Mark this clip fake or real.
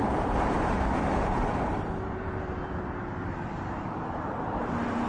fake